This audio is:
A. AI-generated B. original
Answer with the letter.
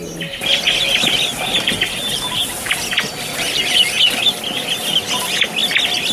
B